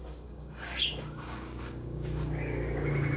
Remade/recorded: remade